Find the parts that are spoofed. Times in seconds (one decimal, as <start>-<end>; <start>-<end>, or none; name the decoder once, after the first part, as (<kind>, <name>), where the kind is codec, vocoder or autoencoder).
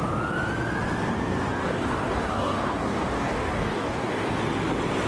1.6-4.4 (codec, DAC)